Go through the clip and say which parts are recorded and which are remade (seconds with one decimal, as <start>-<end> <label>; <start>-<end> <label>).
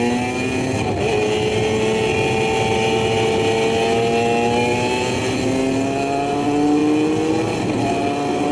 0.0-8.5 recorded